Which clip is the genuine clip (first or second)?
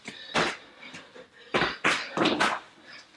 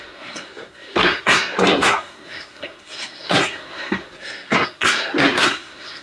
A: first